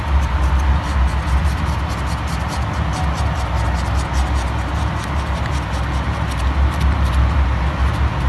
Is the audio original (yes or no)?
yes